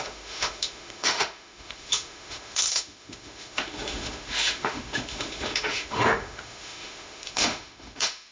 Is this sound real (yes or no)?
no